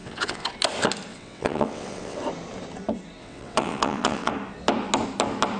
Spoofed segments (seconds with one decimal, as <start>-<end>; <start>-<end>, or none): 0.0-0.5; 1.1-2.2; 3.2-4.3